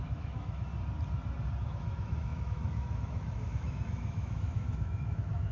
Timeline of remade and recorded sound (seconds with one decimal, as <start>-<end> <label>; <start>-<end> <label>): 0.0-0.7 remade; 0.7-1.6 recorded; 1.6-5.5 remade